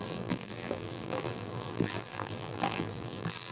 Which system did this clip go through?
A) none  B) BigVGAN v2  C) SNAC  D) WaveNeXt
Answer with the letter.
B